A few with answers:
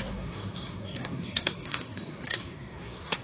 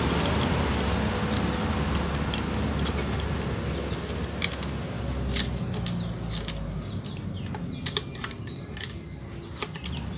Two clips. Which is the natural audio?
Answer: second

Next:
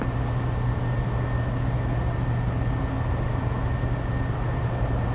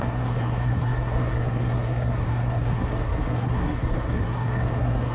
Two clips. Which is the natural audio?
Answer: first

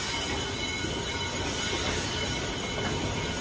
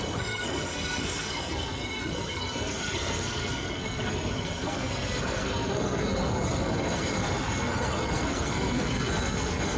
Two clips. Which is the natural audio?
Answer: first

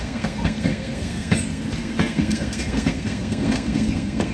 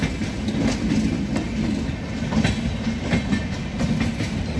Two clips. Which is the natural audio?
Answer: second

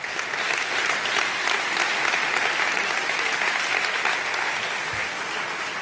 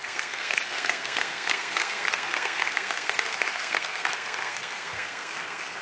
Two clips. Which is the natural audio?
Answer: first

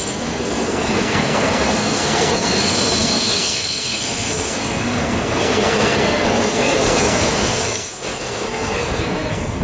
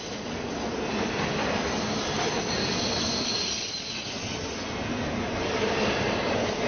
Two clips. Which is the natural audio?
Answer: second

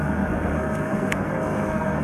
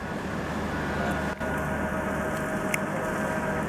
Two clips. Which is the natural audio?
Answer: second